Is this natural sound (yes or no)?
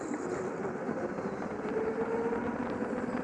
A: yes